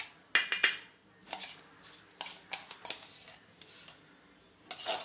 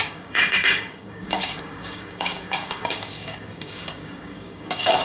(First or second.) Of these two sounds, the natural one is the first